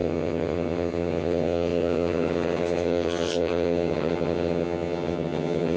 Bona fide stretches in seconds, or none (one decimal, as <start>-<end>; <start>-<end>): none